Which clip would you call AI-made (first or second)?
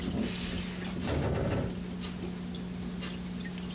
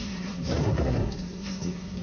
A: second